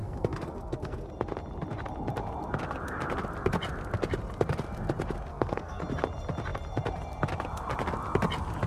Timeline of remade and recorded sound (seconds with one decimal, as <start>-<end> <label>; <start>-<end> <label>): 0.0-1.1 remade; 1.1-5.3 recorded; 5.3-5.8 remade; 5.8-8.7 recorded